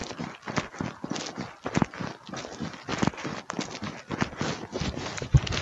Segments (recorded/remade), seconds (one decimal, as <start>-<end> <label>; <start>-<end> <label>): 0.0-5.6 recorded

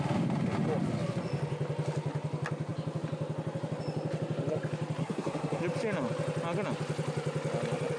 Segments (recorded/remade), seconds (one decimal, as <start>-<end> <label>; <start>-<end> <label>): 0.0-5.0 recorded; 5.0-5.6 remade; 5.6-8.0 recorded

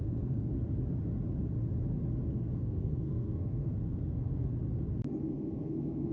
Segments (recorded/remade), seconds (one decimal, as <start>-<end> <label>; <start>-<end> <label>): 0.0-0.5 remade; 0.5-2.3 recorded; 2.3-4.5 remade; 4.5-5.2 recorded; 5.2-6.1 remade

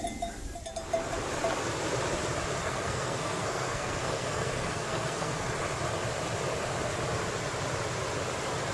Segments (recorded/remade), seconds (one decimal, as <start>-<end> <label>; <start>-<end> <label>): 0.0-2.6 recorded; 2.6-5.4 remade; 5.4-8.7 recorded

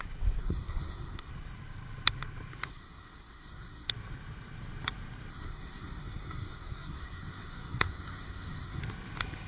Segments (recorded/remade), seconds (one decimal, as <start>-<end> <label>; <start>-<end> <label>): 0.0-0.4 recorded; 0.4-1.3 remade; 1.3-2.7 recorded; 2.7-3.9 remade; 3.9-5.3 recorded; 5.3-8.8 remade; 8.8-9.5 recorded